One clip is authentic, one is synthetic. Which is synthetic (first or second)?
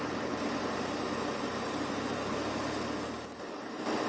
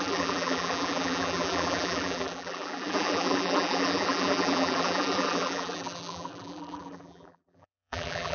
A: second